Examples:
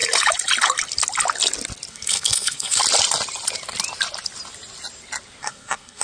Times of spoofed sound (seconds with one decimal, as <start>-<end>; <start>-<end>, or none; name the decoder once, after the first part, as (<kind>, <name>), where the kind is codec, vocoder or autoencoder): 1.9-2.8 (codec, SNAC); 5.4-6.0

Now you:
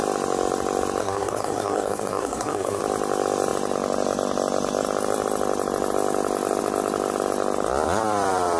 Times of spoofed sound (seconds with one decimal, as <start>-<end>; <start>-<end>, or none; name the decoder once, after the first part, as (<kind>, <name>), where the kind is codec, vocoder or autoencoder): 1.0-2.8 (codec, SNAC)

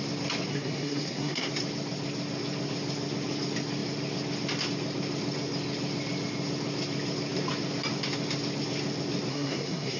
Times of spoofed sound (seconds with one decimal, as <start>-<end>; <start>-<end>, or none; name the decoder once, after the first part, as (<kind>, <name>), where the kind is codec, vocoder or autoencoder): 0.5-1.5 (codec, SNAC); 9.3-10.0